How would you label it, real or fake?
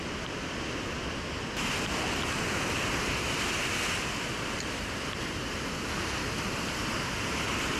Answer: real